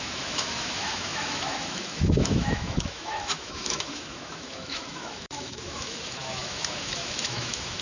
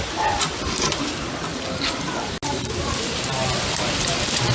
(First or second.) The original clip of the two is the second